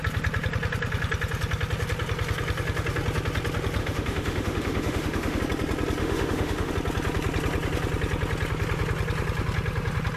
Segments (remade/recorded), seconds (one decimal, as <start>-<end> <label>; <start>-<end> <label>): 0.0-3.8 recorded; 3.8-5.4 remade; 5.4-6.0 recorded; 6.0-6.7 remade; 6.7-10.2 recorded